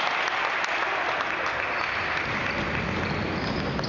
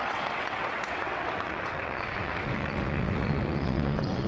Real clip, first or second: first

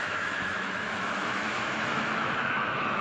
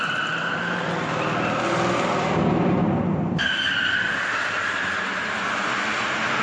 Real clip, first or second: second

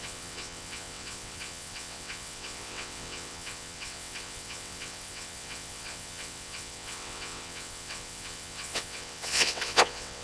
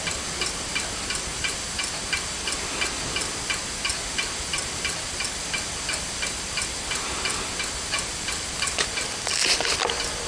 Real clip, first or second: second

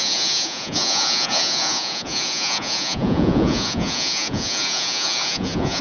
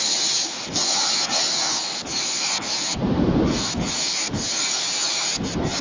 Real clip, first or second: second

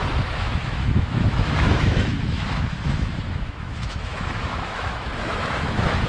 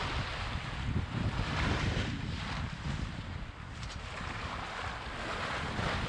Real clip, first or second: second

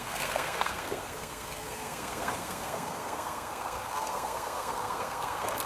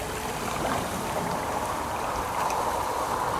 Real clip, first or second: second